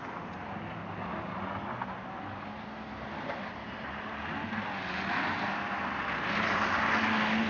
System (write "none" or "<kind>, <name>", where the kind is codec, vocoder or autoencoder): none